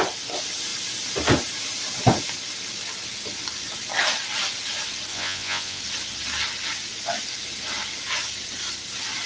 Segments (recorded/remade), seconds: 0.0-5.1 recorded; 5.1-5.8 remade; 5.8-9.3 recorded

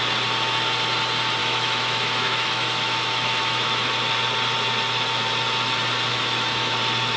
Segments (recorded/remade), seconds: 0.0-1.4 recorded; 1.4-3.9 remade; 3.9-6.1 recorded; 6.1-6.7 remade; 6.7-7.2 recorded

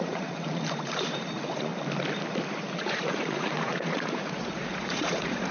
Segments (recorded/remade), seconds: 0.0-1.7 remade; 1.7-2.6 recorded; 2.6-5.5 remade

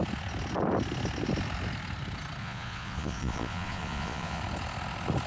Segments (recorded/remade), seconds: 0.0-2.4 recorded; 2.4-4.4 remade; 4.4-5.3 recorded

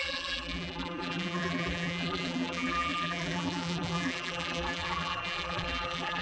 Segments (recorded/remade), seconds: 0.0-6.2 remade

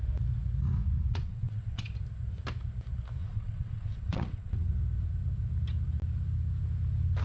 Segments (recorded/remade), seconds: 0.0-1.1 recorded; 1.1-1.9 remade; 1.9-3.2 recorded; 3.2-4.7 remade; 4.7-7.2 recorded

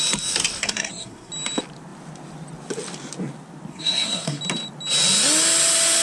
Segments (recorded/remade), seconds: 0.0-0.6 recorded; 0.6-1.3 remade; 1.3-3.7 recorded; 3.7-4.4 remade; 4.4-6.0 recorded